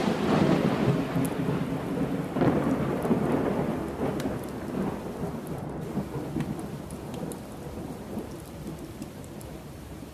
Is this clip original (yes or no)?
no